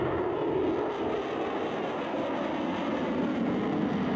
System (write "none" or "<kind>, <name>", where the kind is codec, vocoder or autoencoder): none